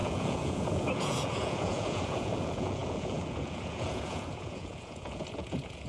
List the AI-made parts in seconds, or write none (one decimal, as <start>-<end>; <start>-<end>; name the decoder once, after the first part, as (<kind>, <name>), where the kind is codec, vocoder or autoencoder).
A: 0.0-5.9 (vocoder, Vocos)